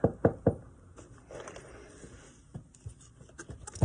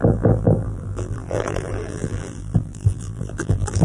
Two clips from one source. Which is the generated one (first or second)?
second